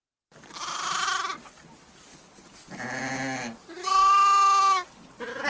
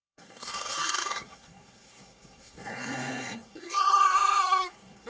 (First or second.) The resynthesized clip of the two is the second